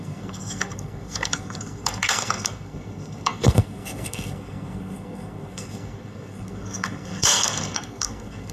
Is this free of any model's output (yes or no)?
no